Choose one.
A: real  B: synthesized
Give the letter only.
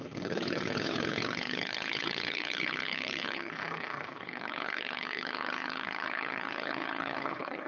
B